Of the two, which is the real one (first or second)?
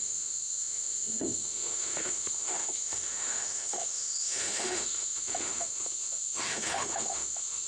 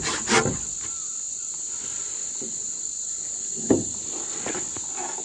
second